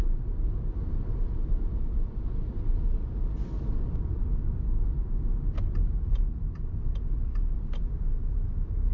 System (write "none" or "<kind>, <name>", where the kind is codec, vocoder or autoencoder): vocoder, BigVGAN v2